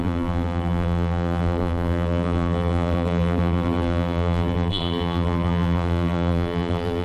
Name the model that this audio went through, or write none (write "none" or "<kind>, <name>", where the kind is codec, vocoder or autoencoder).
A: vocoder, BigVGAN v2